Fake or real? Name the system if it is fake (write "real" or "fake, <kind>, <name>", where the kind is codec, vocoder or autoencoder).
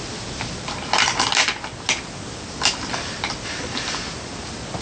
real